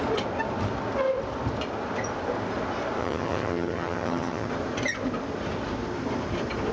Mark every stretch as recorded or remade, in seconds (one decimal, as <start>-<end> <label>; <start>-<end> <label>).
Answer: 0.0-3.0 recorded; 3.0-4.5 remade; 4.5-6.7 recorded